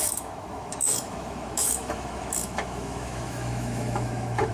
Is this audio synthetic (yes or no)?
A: yes